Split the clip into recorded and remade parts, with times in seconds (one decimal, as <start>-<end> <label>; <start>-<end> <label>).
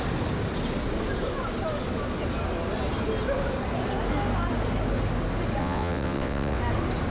0.0-5.6 recorded; 5.6-6.6 remade; 6.6-7.1 recorded